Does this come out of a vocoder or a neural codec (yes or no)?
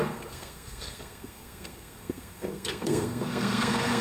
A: yes